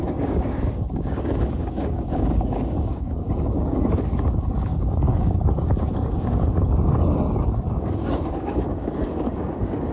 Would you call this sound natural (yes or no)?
no